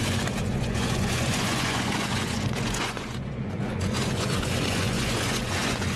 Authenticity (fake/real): fake